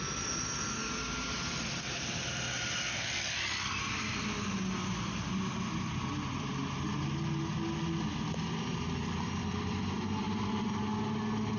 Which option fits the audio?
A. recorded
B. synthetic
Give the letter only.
A